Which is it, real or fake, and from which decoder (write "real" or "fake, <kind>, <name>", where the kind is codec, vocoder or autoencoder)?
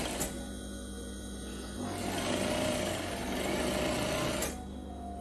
real